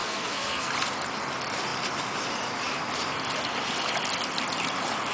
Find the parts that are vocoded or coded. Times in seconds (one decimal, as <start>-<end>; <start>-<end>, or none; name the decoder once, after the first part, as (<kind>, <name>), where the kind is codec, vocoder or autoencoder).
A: 0.0-0.7 (codec, SNAC)